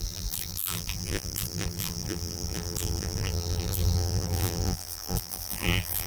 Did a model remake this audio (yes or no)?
yes